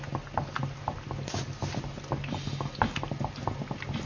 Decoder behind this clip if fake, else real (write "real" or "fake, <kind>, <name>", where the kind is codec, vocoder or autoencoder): real